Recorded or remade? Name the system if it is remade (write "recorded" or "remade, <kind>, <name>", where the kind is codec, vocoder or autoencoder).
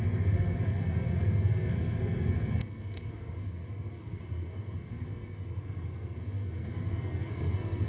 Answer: remade, codec, SNAC